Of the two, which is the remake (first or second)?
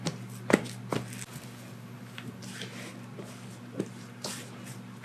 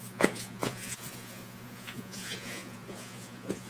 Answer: second